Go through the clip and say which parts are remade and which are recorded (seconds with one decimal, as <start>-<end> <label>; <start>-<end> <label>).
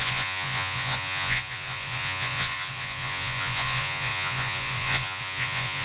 0.0-5.8 remade